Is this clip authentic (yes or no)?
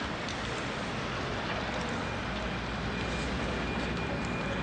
yes